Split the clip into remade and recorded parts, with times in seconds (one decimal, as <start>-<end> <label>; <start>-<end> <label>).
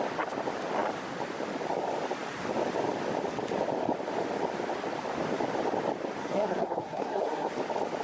0.0-6.2 recorded; 6.2-7.5 remade; 7.5-8.0 recorded